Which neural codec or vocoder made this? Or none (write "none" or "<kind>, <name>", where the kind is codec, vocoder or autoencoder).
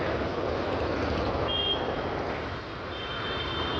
none